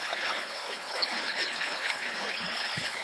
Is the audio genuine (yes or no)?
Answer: no